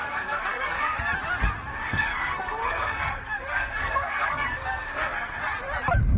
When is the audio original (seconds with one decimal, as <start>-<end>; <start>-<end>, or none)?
1.0-1.7; 5.4-6.2